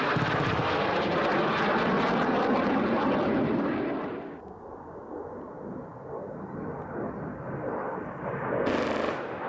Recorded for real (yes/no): yes